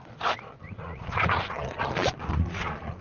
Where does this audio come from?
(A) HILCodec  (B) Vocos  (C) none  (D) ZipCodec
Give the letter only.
B